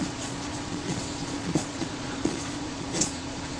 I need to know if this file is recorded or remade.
remade